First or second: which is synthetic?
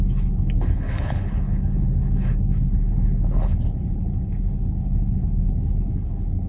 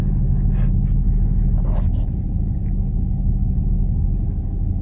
first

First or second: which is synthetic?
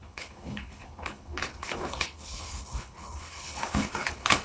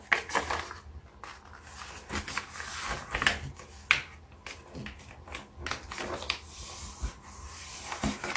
first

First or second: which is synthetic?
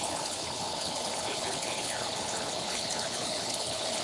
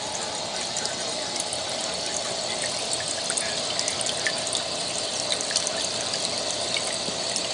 first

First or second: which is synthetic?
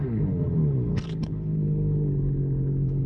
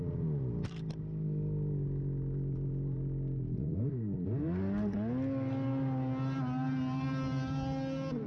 first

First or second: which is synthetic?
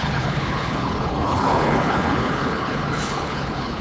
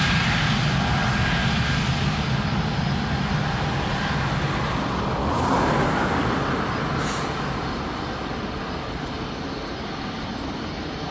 first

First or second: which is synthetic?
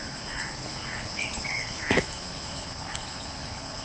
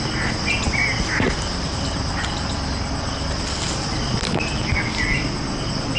first